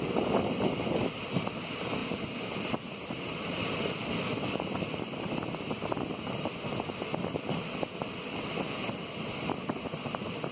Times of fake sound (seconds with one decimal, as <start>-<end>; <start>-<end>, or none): none